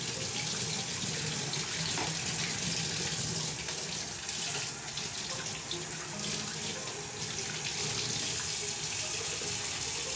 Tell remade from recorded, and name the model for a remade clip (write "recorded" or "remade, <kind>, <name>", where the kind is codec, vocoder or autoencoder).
recorded